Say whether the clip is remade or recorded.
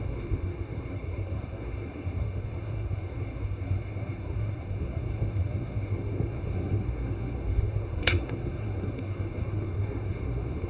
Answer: remade